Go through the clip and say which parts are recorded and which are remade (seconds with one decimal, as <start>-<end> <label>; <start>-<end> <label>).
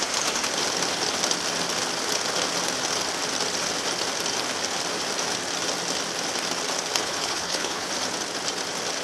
0.0-7.0 recorded; 7.0-7.9 remade; 7.9-9.0 recorded